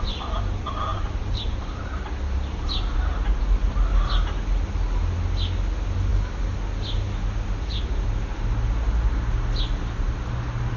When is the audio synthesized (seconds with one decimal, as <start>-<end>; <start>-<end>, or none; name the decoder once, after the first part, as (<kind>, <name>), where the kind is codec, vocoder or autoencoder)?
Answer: 0.9-3.4 (vocoder, BigVGAN v2)